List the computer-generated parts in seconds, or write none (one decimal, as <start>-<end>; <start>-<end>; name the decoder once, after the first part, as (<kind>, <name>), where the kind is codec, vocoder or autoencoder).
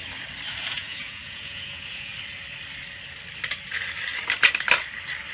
0.7-2.1 (vocoder, Vocos)